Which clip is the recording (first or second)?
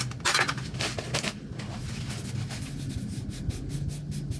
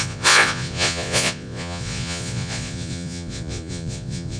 first